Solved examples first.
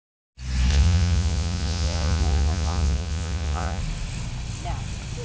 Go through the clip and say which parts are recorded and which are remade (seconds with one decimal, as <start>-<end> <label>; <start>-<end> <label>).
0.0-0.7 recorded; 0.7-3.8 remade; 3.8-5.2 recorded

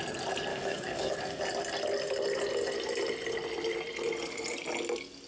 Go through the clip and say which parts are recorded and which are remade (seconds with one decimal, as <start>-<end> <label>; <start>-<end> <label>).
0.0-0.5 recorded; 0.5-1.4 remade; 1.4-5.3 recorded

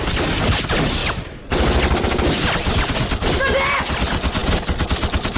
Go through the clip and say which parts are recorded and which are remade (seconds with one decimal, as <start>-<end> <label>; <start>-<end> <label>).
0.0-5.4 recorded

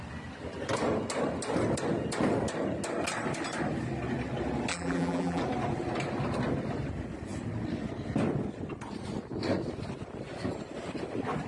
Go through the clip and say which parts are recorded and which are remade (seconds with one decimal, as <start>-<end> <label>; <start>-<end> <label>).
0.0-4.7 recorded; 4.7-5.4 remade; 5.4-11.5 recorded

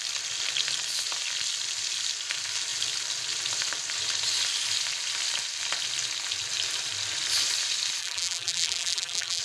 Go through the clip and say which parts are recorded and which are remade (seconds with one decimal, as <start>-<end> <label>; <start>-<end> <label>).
0.0-8.0 recorded; 8.0-9.4 remade